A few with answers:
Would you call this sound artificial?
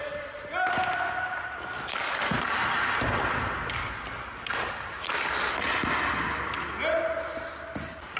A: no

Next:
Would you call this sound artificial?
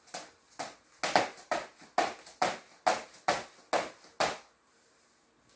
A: no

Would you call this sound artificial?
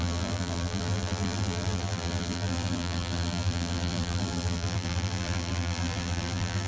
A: yes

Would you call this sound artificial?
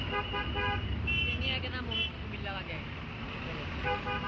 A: no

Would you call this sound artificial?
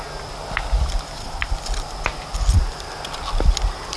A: no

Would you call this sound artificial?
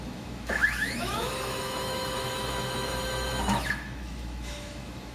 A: yes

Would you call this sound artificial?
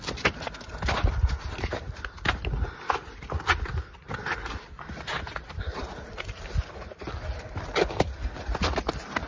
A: no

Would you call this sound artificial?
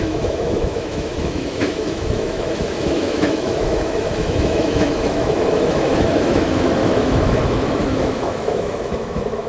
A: yes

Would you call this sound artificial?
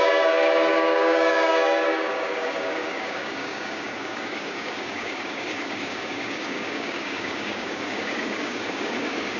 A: yes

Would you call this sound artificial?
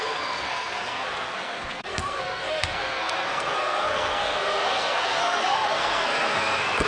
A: yes